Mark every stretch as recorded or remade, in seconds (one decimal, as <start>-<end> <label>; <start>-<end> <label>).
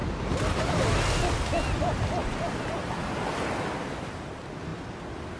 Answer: 0.0-0.8 remade; 0.8-2.2 recorded; 2.2-2.9 remade; 2.9-5.4 recorded